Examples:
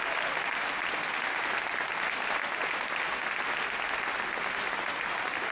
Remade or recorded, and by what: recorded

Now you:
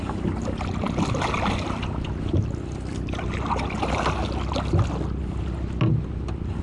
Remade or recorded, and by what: recorded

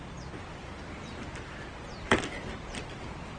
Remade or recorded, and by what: recorded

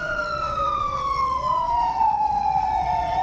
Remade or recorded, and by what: remade, vocoder, WaveNeXt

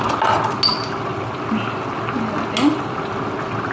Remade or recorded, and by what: recorded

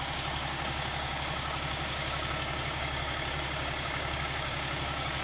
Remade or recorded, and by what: remade, codec, DAC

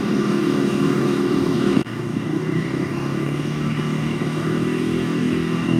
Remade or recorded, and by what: remade, codec, DAC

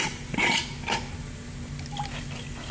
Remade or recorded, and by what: recorded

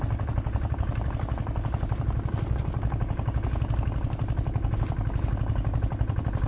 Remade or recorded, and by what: recorded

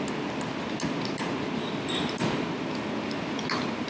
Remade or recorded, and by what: recorded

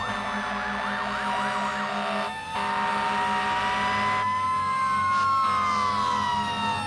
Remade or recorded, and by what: recorded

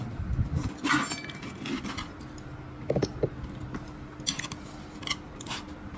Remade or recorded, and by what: recorded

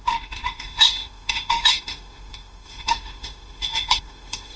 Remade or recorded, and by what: remade, autoencoder, DAC-VAE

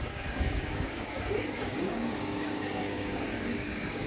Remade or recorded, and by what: remade, codec, DAC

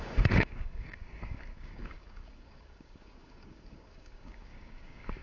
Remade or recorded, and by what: remade, codec, DAC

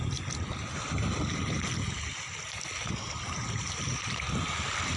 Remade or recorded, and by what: recorded